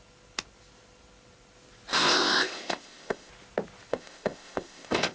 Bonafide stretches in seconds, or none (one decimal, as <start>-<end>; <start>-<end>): 0.0-1.9; 3.3-3.9